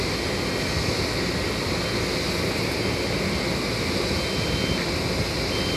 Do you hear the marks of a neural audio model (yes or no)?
no